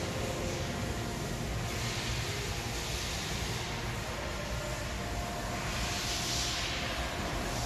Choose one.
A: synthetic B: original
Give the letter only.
B